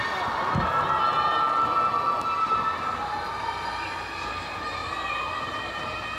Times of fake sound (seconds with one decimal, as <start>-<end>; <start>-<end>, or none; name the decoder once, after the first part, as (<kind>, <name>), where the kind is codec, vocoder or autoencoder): 4.8-6.2 (vocoder, BigVGAN v2)

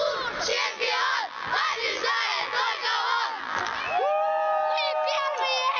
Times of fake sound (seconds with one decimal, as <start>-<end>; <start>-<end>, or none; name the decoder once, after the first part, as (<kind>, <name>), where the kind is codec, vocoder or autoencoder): 0.5-4.0 (vocoder, BigVGAN v2)

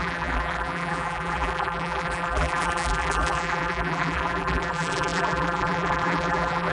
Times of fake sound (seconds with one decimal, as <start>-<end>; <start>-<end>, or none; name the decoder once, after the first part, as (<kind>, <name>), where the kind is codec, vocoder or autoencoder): 0.0-6.7 (vocoder, BigVGAN v2)

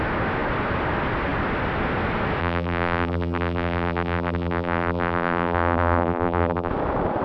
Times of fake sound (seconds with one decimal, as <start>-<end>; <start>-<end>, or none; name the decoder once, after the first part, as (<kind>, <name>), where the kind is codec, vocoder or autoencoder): 2.4-6.7 (vocoder, BigVGAN v2)

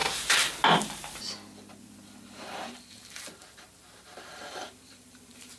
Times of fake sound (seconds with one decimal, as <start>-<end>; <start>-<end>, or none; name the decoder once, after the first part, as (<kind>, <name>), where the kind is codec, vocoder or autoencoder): 1.8-5.6 (vocoder, BigVGAN v2)